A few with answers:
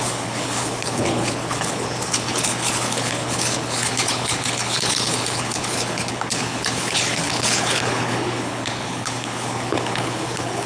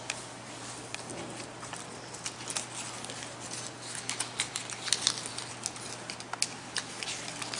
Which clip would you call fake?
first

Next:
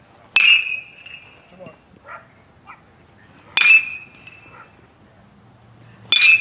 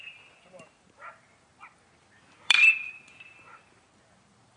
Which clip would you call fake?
second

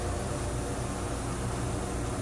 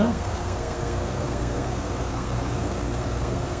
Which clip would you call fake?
second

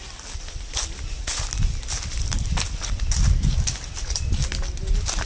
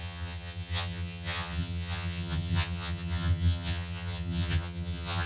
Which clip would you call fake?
second